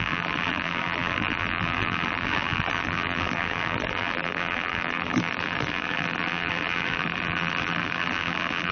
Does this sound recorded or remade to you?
remade